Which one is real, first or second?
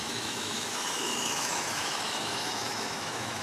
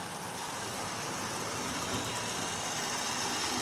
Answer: second